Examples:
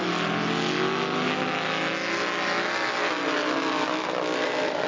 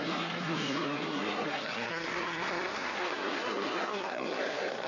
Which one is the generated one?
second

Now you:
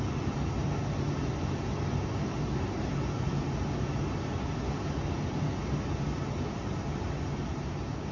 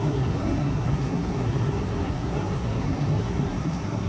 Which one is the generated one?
second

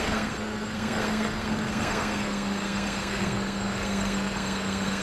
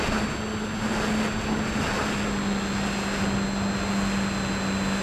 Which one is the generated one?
first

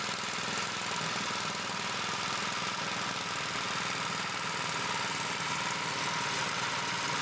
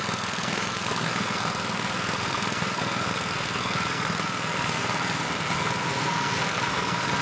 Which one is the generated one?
second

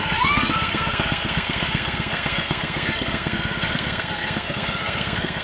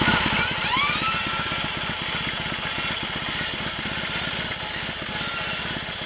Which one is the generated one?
first